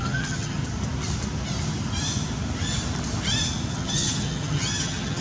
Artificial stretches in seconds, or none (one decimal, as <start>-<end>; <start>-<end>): 0.0-0.6; 3.7-5.2